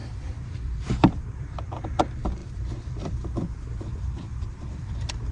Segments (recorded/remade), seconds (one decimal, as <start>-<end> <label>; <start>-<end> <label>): 0.0-2.0 remade; 2.0-2.4 recorded; 2.4-3.3 remade; 3.3-4.3 recorded; 4.3-5.3 remade